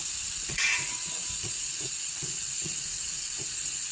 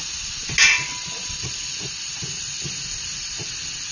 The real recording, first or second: second